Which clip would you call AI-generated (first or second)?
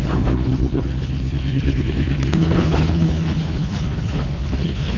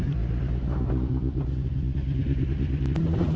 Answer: first